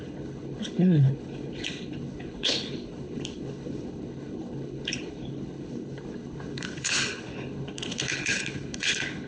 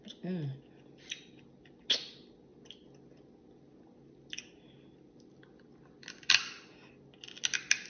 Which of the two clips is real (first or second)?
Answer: second